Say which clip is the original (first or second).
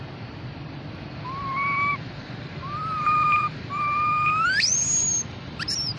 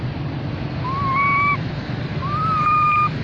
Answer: second